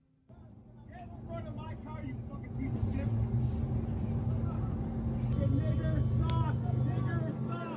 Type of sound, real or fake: real